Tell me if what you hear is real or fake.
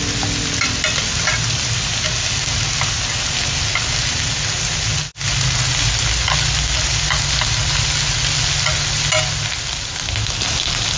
real